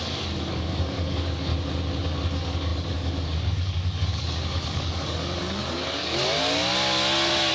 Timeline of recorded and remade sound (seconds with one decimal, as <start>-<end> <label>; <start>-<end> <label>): 0.0-1.5 remade; 1.5-2.0 recorded; 2.0-6.7 remade; 6.7-7.5 recorded